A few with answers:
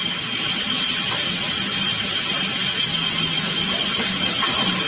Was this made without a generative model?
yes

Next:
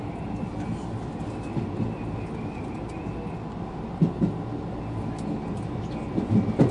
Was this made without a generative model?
yes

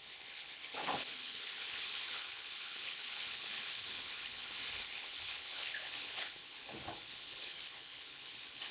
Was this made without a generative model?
no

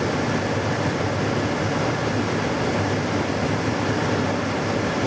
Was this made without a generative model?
yes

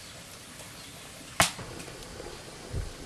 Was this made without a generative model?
yes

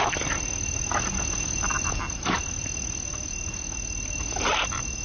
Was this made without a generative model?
yes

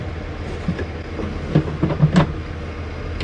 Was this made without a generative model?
yes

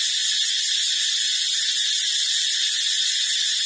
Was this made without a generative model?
yes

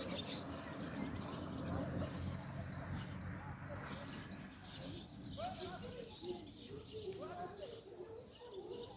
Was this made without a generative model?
yes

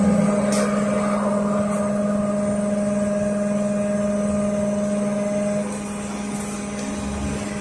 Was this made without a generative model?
yes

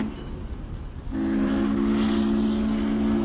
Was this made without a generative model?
yes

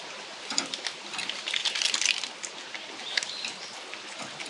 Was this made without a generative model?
yes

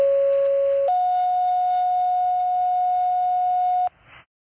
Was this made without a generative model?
yes